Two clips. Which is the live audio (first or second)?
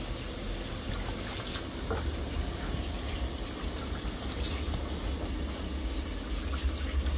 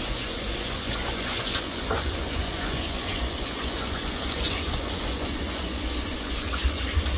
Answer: first